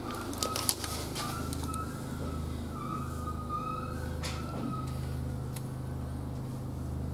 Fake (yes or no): no